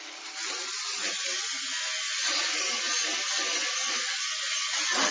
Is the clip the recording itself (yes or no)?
yes